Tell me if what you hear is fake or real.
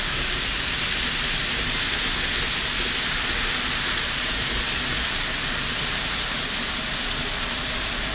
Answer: real